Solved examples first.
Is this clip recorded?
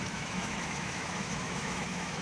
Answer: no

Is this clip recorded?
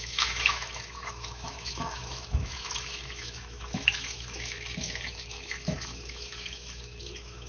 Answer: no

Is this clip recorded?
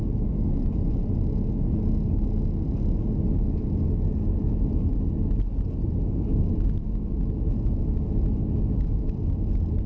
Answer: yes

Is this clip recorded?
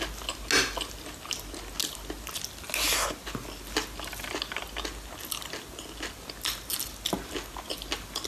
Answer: yes